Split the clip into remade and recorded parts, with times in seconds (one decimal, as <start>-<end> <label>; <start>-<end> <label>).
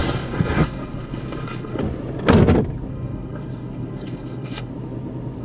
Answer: 0.0-1.8 remade; 1.8-2.9 recorded; 2.9-4.7 remade; 4.7-5.4 recorded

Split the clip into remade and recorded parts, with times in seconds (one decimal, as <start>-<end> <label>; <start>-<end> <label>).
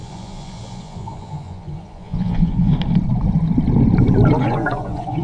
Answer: 0.0-2.7 remade; 2.7-4.4 recorded; 4.4-5.2 remade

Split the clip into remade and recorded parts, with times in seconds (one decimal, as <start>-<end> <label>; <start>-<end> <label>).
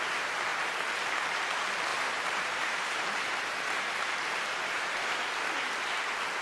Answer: 0.0-0.5 recorded; 0.5-1.2 remade; 1.2-1.9 recorded; 1.9-3.8 remade; 3.8-4.2 recorded; 4.2-5.2 remade; 5.2-6.4 recorded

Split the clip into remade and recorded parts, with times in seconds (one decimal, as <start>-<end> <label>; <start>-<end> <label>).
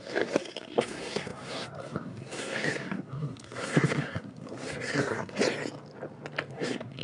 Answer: 0.0-5.4 remade; 5.4-6.5 recorded; 6.5-7.0 remade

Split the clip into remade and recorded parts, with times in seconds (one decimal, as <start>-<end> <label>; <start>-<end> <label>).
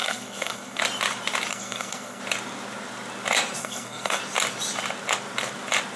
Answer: 0.0-0.8 remade; 0.8-1.5 recorded; 1.5-2.2 remade; 2.2-3.6 recorded; 3.6-4.2 remade; 4.2-6.0 recorded